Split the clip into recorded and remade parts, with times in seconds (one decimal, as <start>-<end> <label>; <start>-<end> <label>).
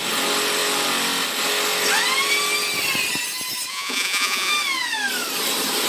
0.0-3.7 recorded; 3.7-4.5 remade; 4.5-5.9 recorded